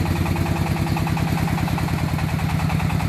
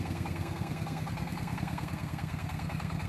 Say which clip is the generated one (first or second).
second